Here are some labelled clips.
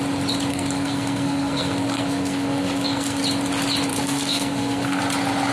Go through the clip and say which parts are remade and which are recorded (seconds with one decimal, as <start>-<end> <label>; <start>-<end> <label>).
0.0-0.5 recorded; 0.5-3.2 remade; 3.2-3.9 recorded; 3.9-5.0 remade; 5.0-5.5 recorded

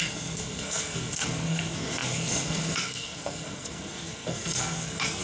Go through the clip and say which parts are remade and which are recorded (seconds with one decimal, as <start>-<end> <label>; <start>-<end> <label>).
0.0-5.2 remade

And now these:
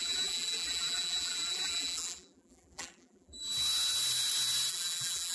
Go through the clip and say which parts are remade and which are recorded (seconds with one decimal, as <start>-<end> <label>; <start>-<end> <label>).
0.0-3.4 remade; 3.4-4.7 recorded; 4.7-5.3 remade